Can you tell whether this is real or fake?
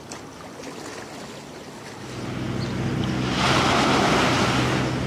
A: real